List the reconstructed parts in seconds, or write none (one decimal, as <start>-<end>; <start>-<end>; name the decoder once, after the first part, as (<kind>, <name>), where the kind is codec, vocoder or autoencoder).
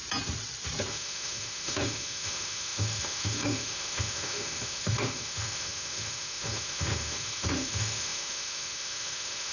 0.9-9.5 (autoencoder, DAC-VAE)